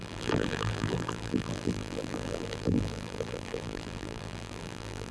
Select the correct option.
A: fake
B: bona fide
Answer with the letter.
A